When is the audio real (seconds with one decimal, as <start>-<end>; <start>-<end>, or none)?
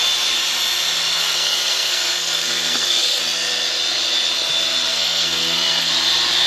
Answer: 0.0-1.2; 3.2-4.9; 5.9-6.5